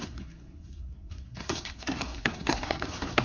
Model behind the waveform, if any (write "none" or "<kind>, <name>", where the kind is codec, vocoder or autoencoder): codec, SNAC